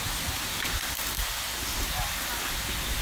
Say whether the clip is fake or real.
real